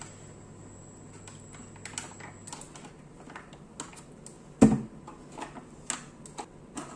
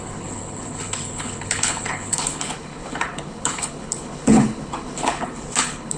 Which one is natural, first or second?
first